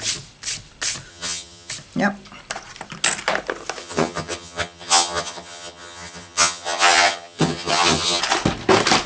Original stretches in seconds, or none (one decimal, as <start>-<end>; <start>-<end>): 0.0-1.1; 1.7-3.8; 8.2-9.1